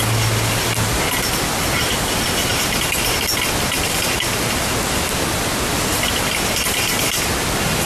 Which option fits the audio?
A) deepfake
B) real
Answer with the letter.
B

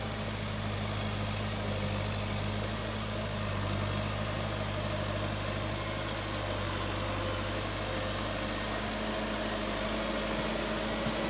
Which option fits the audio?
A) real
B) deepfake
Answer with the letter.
A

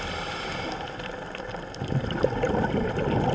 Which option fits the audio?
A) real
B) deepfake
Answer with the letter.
A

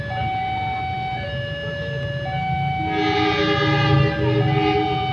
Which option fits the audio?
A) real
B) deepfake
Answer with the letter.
A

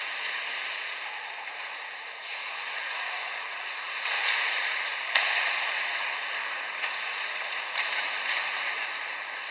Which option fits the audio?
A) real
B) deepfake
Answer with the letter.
B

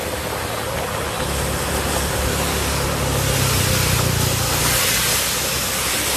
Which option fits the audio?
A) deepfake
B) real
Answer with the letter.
B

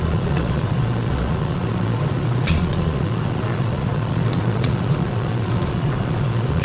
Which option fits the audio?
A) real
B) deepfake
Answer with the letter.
B